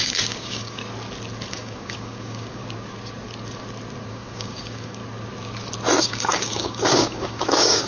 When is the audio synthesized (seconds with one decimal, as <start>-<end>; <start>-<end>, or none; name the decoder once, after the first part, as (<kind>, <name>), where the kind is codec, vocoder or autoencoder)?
0.0-0.8 (codec, DAC); 1.5-2.6; 4.1-5.0; 6.0-7.9